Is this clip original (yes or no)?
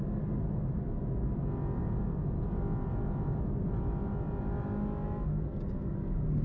yes